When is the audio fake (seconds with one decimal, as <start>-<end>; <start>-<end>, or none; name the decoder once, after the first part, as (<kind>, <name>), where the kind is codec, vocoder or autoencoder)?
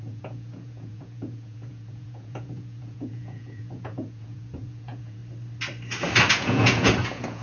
0.0-5.2 (vocoder, Vocos); 6.3-7.4